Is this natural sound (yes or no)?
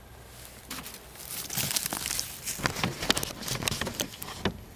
yes